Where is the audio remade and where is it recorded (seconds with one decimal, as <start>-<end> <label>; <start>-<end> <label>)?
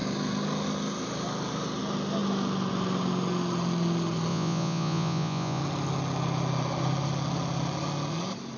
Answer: 0.0-4.3 recorded; 4.3-5.6 remade; 5.6-8.6 recorded